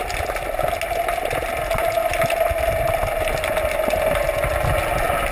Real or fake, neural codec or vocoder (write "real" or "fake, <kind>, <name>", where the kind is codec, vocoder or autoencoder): real